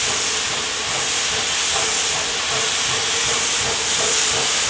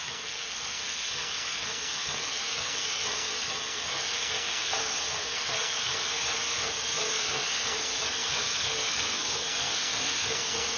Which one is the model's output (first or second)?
second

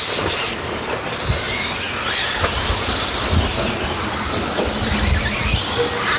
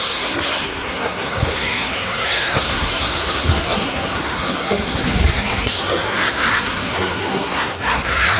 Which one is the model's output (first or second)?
second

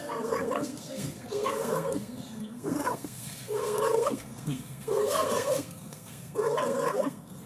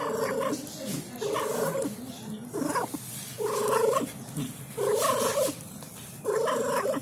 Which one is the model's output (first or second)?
first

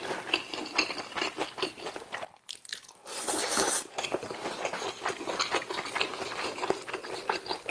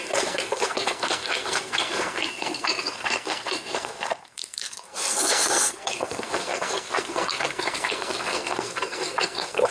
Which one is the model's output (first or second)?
second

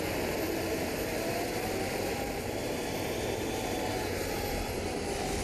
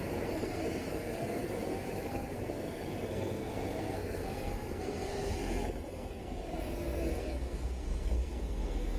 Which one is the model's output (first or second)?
second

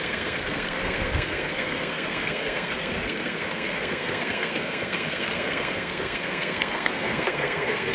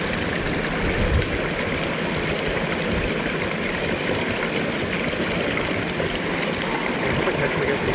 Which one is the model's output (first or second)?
first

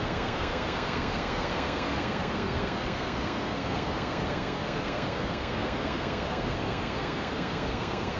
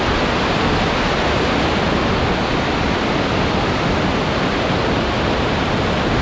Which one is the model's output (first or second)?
first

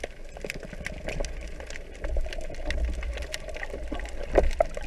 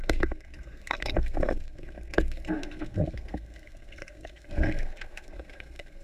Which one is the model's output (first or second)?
second